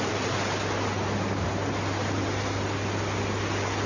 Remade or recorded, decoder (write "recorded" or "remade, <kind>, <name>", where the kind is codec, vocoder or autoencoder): recorded